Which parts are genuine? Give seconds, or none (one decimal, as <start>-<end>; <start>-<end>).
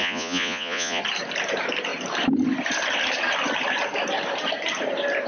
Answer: 1.0-5.3